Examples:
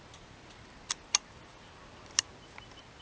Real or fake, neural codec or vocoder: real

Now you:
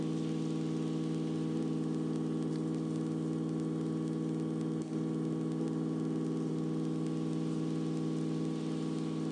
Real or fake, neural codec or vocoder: real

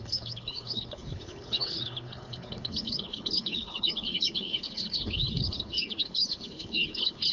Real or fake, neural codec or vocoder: fake, codec, HILCodec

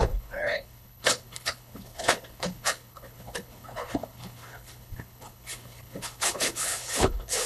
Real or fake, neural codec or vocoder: fake, codec, HILCodec